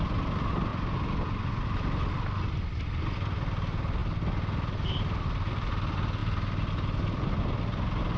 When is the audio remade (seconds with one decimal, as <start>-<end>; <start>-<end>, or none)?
none